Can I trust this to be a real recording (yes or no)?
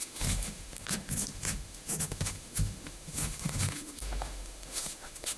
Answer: no